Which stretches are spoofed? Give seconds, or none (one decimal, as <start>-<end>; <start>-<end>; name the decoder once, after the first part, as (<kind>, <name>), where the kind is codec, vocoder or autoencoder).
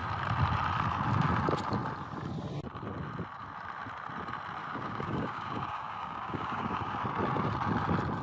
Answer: 4.6-7.0 (codec, DAC)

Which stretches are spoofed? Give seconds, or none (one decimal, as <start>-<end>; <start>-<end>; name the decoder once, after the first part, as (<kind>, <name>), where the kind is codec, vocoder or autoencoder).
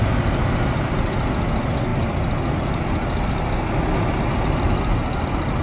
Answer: none